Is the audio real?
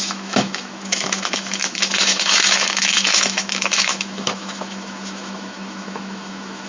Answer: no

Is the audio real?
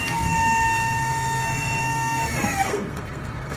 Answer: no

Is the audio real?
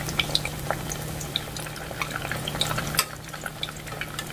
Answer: yes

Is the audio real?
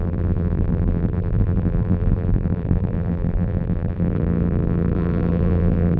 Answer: no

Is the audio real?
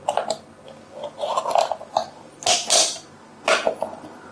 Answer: yes